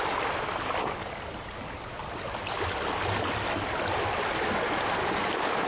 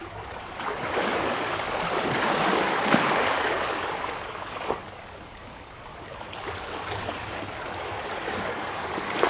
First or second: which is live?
first